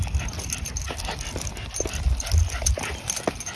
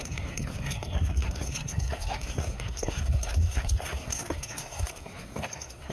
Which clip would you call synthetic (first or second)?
second